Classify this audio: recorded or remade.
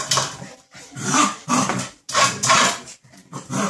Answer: remade